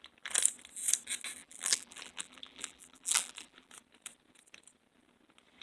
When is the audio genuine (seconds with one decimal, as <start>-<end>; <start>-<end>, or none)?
0.0-1.4; 3.7-5.6